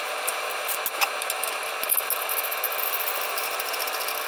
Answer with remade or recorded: recorded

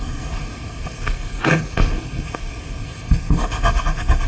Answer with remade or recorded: remade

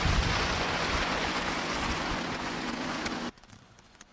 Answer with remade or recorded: remade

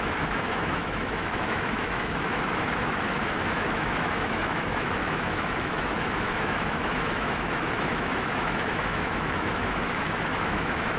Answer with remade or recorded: remade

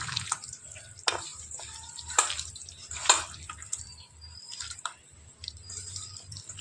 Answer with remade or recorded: remade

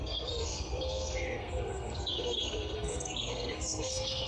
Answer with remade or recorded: remade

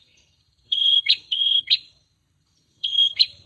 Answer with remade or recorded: remade